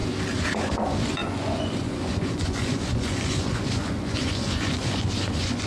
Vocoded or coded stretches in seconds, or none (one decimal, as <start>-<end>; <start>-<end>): 0.6-5.7